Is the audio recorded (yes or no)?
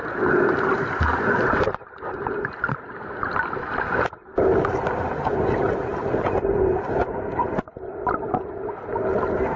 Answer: yes